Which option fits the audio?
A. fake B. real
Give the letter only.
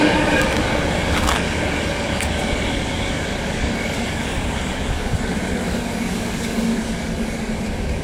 A